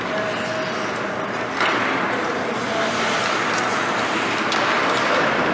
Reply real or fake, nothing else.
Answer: real